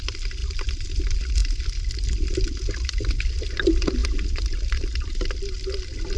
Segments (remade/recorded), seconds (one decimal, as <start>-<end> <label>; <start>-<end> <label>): 0.0-0.4 recorded; 0.4-1.0 remade; 1.0-4.0 recorded; 4.0-5.2 remade; 5.2-6.2 recorded